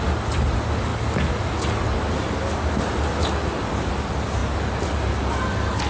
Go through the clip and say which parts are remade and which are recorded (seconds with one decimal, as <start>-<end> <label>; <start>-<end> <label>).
0.0-5.9 recorded